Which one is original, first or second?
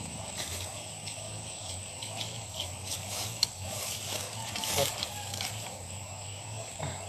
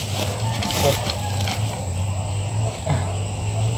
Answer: second